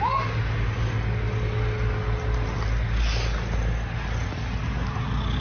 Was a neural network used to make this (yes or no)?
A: no